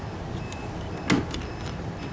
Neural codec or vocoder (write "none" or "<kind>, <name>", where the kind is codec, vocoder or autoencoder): none